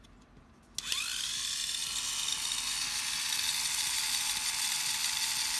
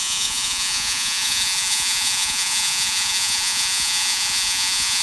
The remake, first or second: second